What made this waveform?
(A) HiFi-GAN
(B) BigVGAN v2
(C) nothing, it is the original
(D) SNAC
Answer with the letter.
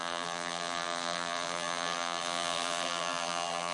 B